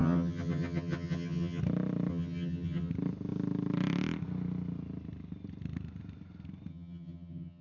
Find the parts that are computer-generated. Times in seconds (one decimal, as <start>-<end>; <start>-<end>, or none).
0.0-1.6; 2.1-2.9; 6.7-7.6